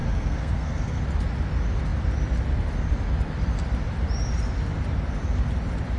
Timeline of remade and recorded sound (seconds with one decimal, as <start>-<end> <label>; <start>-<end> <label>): 0.0-1.0 remade; 1.0-6.0 recorded